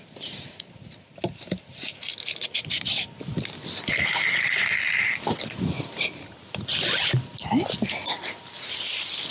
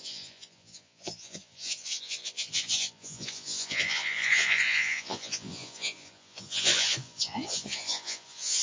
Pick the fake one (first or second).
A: second